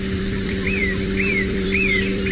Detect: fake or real fake